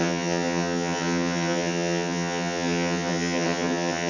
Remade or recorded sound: remade